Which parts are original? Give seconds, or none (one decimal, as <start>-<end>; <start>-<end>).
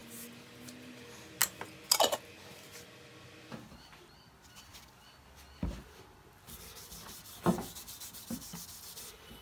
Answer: 0.0-5.6; 7.8-9.4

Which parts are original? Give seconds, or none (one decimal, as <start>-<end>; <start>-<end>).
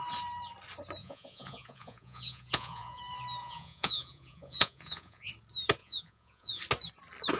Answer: 0.0-1.0; 3.0-3.4; 5.3-5.8; 6.6-7.4